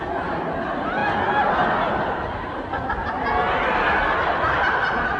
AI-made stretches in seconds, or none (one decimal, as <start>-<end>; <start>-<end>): none